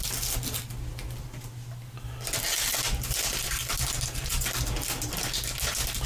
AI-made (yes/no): no